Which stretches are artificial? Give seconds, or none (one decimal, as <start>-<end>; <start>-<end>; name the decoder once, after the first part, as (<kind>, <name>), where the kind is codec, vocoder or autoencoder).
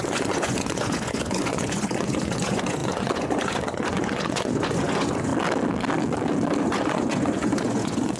0.0-5.3 (vocoder, Vocos); 6.6-8.2